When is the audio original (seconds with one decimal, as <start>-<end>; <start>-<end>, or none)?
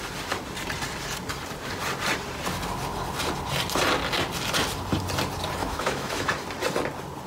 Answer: 0.0-5.6; 6.3-7.3